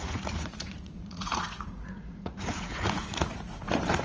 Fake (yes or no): yes